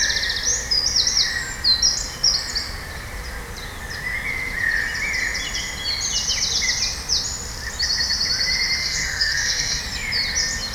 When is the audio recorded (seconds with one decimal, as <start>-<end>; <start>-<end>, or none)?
0.0-8.8; 9.8-10.7